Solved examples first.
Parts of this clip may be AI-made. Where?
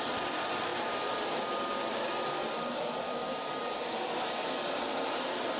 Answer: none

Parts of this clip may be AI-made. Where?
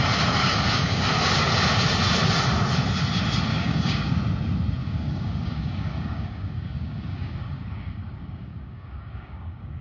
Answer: 0.4-1.0 (codec, DAC); 3.5-4.1; 4.8-9.8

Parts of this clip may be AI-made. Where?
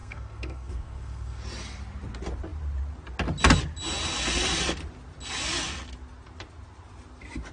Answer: 0.0-1.4 (codec, SNAC)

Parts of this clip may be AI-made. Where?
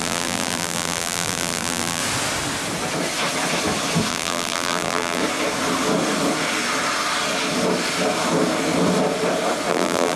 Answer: 0.0-2.0 (vocoder, BigVGAN v2); 4.1-5.2; 9.7-10.2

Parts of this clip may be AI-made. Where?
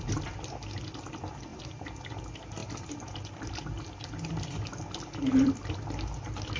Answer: none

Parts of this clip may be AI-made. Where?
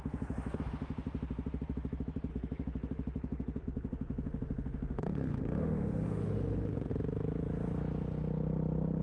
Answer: 2.3-6.9 (autoencoder, DAC-VAE)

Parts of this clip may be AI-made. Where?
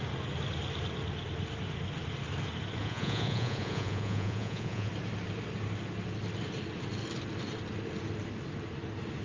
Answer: 2.8-4.9 (vocoder, Vocos)